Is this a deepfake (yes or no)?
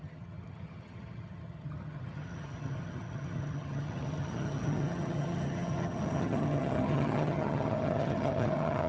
yes